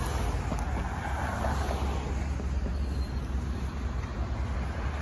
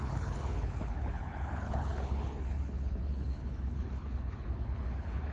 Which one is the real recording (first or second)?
first